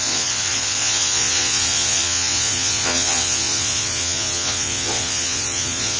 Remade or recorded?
remade